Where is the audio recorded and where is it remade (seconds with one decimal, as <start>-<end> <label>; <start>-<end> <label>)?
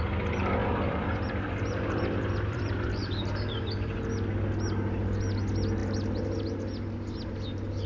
0.0-0.6 recorded; 0.6-4.1 remade; 4.1-7.9 recorded